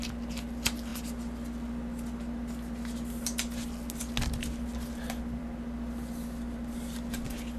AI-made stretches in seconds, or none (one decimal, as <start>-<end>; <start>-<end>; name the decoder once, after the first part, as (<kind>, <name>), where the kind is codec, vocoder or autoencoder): none